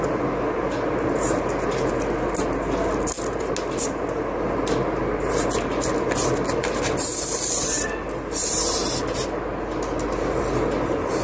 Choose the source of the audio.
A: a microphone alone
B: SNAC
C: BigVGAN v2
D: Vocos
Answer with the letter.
A